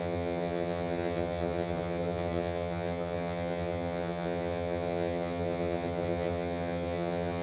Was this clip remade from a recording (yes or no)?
yes